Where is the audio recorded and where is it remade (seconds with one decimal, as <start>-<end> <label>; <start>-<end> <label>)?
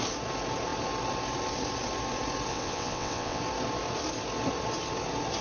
0.0-2.5 recorded; 2.5-3.4 remade; 3.4-5.4 recorded